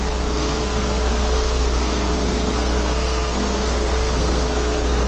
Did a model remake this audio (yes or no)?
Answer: yes